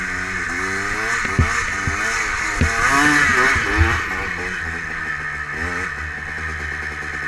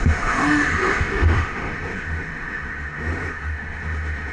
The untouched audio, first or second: first